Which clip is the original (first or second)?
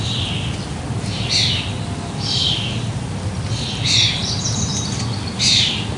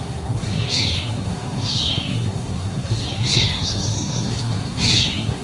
first